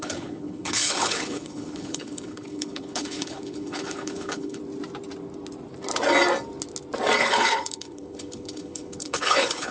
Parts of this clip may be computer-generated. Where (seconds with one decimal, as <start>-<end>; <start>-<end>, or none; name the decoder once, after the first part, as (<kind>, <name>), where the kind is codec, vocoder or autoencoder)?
0.0-4.6 (codec, HILCodec); 7.2-9.7